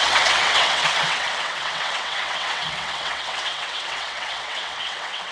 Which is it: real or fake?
fake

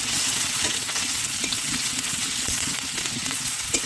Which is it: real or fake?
fake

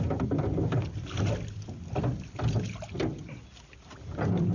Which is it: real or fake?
real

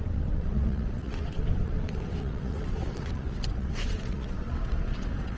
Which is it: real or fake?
fake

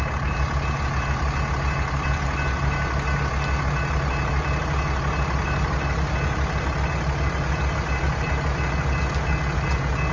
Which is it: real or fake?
real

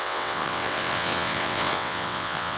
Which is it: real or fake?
fake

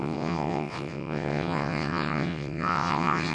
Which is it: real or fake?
fake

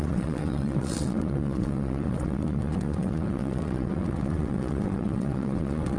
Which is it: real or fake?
fake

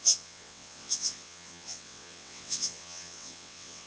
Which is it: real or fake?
fake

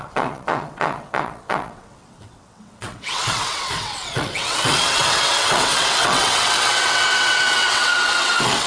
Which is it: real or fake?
fake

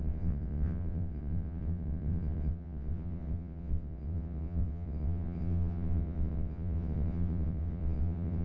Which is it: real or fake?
fake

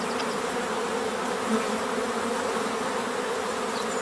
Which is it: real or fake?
real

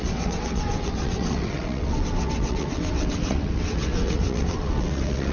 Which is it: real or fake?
fake